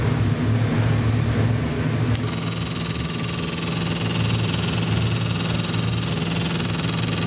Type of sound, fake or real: real